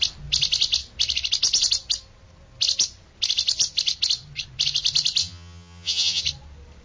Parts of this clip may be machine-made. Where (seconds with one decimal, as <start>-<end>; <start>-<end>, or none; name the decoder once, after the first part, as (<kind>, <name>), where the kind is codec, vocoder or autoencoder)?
5.2-6.2 (vocoder, HiFi-GAN)